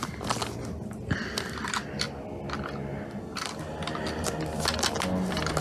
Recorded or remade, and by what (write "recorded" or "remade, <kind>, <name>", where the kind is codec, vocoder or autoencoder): recorded